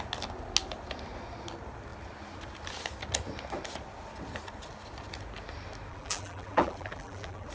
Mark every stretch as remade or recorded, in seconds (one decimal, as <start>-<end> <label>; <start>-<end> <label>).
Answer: 0.0-5.9 recorded; 5.9-7.5 remade